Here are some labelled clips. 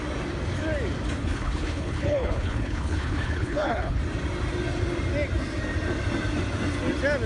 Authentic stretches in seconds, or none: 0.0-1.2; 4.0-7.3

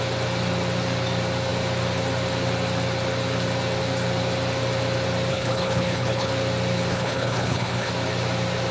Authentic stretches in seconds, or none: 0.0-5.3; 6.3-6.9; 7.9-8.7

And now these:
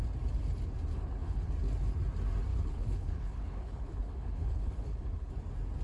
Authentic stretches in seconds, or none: 0.0-0.9; 1.5-2.5; 5.3-5.8

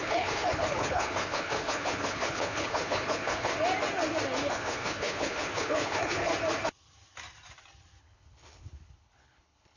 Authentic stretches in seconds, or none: 3.5-4.5; 6.3-8.0

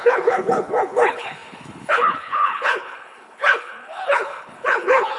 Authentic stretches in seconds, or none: none

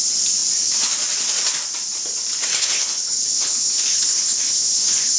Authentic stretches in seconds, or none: 0.0-2.5